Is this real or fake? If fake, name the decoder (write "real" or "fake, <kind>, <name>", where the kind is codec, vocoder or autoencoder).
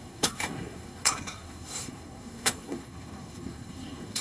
fake, codec, SNAC